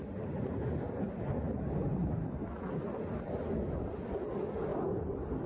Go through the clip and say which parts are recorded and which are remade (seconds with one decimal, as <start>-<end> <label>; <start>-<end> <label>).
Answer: 0.0-5.5 recorded